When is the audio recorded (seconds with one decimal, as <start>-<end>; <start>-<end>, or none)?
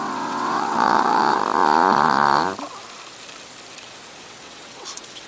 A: 1.4-4.3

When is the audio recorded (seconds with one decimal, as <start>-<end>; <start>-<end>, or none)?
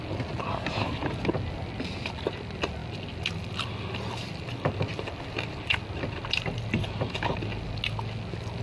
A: 0.0-2.8; 7.7-8.6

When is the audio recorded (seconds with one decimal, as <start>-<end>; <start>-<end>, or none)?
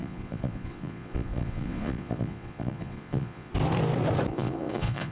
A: 3.5-4.3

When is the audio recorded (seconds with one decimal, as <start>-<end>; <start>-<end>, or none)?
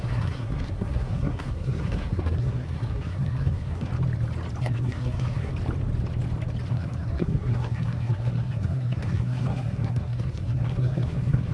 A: 3.9-4.6; 5.5-6.7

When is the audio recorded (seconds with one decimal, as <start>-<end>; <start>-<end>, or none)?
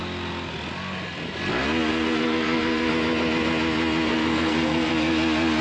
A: 0.0-1.9; 2.9-4.1; 4.9-5.6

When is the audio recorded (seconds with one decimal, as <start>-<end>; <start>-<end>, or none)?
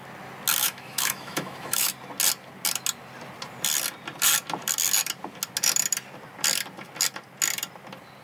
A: 0.0-0.6; 1.9-8.2